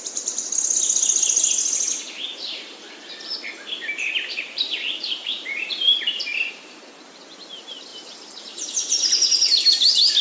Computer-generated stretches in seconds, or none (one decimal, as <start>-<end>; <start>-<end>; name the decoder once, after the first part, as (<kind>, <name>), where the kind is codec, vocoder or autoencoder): 1.9-6.8 (vocoder, BigVGAN v2)